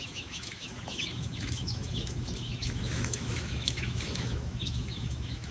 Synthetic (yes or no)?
yes